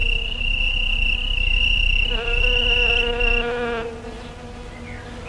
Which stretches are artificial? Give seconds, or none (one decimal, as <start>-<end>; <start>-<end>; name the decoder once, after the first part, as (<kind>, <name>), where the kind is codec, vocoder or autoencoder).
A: none